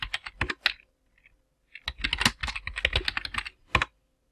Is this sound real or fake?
real